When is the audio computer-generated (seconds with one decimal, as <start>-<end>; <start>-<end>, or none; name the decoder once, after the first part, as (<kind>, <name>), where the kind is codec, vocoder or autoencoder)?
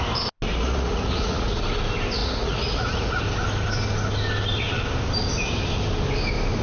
0.5-1.6 (vocoder, Vocos); 2.2-3.2